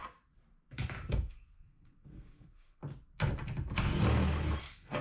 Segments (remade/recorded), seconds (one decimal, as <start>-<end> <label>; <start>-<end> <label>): 0.0-1.1 recorded; 1.1-2.8 remade; 2.8-4.6 recorded; 4.6-5.0 remade